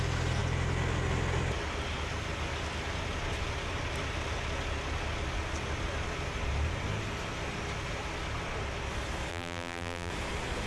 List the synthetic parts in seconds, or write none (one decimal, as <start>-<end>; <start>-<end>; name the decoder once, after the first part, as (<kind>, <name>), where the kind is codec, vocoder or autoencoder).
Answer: 9.3-10.1 (vocoder, BigVGAN v2)